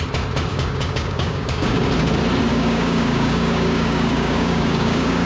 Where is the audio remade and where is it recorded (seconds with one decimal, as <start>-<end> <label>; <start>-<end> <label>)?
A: 0.0-0.5 recorded; 0.5-1.9 remade; 1.9-2.5 recorded; 2.5-5.3 remade